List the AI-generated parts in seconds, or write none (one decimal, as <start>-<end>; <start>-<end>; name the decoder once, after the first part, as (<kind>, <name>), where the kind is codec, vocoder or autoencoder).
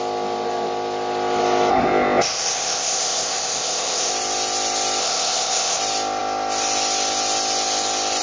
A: 1.7-4.1 (codec, ZipCodec); 5.0-5.8